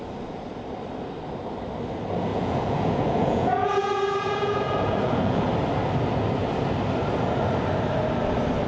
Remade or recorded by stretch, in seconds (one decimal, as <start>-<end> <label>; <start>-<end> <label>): 0.0-2.3 recorded; 2.3-5.5 remade; 5.5-8.7 recorded